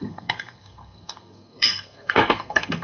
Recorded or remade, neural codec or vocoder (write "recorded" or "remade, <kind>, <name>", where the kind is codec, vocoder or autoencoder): remade, codec, SNAC